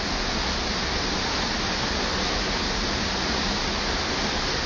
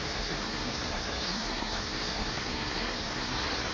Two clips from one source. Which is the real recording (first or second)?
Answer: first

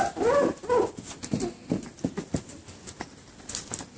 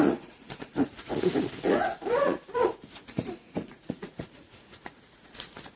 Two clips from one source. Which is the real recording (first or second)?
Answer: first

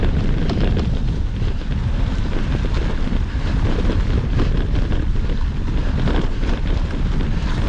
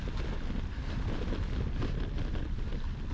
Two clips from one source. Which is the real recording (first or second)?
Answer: second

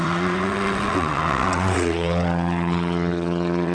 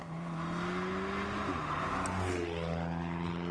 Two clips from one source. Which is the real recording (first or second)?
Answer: second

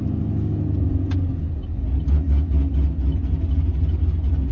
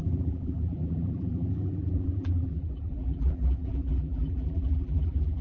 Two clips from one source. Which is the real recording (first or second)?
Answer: first